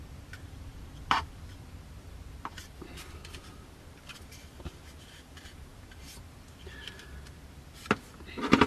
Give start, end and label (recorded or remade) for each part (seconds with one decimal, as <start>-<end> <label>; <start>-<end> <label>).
0.0-8.7 remade